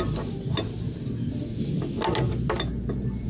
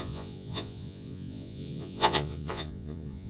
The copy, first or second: second